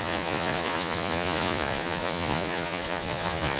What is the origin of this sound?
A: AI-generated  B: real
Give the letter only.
A